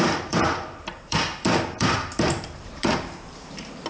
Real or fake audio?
fake